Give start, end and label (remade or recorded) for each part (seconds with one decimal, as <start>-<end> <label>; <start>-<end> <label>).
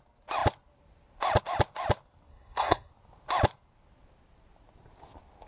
0.0-2.3 recorded; 2.3-2.9 remade; 2.9-5.5 recorded